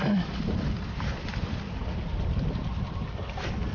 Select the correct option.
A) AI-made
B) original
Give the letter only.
B